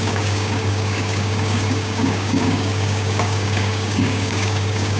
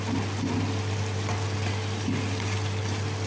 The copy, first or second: first